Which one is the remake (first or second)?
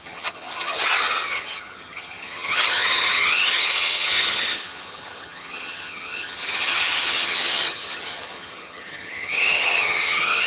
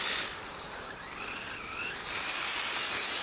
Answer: first